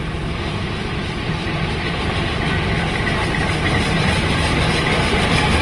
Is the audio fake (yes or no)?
no